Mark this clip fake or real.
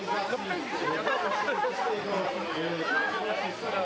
real